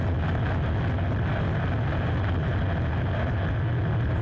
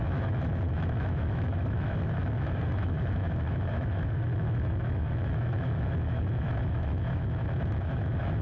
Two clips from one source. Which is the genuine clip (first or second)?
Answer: first